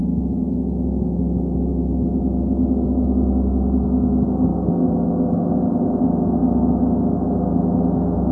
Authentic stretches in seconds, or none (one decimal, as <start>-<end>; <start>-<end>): 0.0-1.7; 2.2-6.4; 7.1-8.3

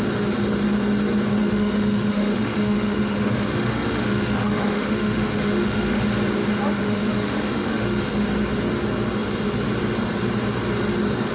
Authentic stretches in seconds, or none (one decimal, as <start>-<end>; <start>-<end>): 0.0-1.4; 6.0-6.8; 8.1-11.3

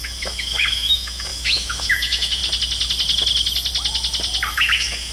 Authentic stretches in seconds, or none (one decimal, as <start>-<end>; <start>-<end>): 2.4-4.5